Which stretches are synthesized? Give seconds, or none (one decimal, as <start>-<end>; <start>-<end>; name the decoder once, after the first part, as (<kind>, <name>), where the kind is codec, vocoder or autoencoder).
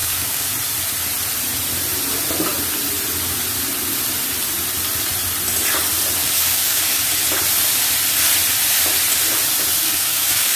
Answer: 0.0-0.5 (codec, DAC); 6.2-7.0; 9.8-10.6